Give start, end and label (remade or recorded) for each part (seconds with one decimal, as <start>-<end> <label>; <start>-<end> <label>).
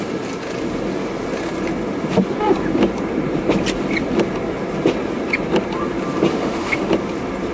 0.0-6.3 recorded; 6.3-6.9 remade; 6.9-7.5 recorded